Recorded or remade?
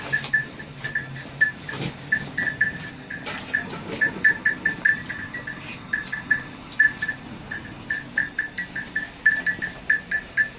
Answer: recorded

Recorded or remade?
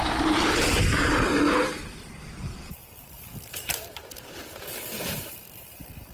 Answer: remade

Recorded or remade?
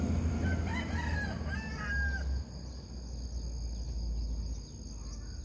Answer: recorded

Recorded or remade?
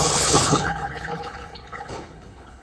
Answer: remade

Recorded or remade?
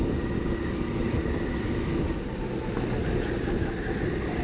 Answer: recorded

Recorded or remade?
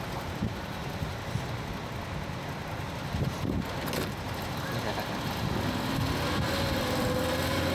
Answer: recorded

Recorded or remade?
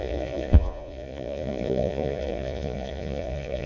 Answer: remade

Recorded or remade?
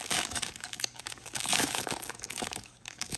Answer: remade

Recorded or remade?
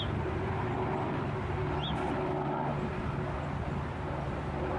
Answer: recorded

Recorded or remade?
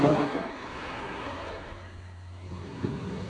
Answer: remade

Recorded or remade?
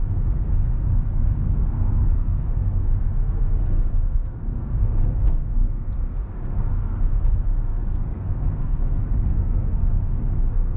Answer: remade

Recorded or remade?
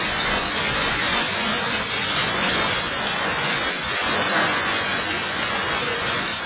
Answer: remade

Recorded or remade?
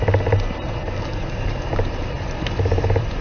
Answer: remade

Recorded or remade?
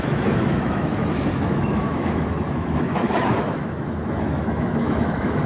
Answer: remade